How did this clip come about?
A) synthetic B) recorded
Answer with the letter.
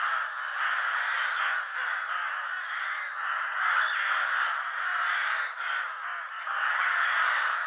B